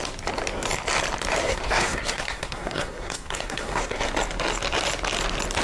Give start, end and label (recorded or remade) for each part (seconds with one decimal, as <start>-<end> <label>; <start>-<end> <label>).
0.0-1.4 recorded; 1.4-4.1 remade; 4.1-5.6 recorded